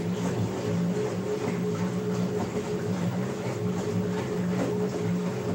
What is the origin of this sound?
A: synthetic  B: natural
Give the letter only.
B